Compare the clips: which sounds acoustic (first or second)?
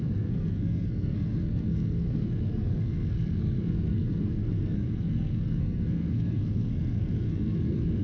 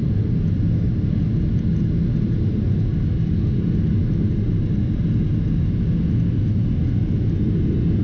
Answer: second